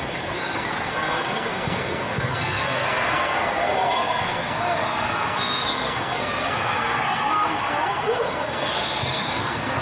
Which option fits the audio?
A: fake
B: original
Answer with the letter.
A